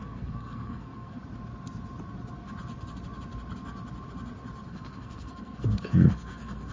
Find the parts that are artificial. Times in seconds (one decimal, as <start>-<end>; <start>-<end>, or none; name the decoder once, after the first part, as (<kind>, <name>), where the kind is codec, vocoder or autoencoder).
0.0-1.2 (codec, SNAC); 4.7-6.7